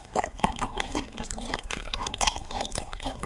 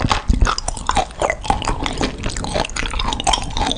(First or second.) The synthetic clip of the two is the first